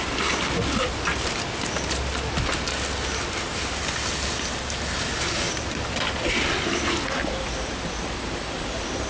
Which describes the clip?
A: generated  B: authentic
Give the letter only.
B